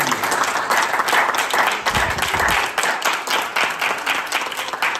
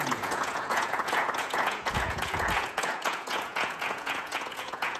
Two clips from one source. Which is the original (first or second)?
first